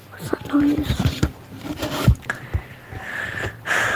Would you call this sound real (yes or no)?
no